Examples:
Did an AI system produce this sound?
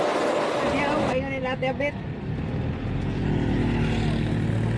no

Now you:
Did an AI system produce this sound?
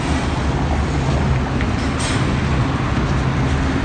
no